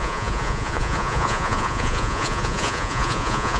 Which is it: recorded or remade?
remade